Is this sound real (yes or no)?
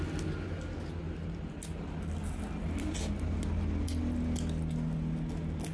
yes